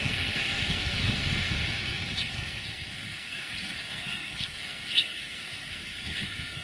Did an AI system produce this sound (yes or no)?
yes